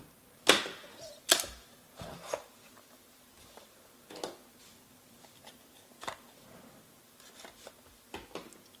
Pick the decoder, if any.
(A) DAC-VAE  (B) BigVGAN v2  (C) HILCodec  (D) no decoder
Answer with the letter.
D